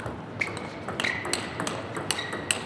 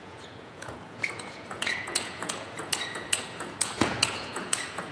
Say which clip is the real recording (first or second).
first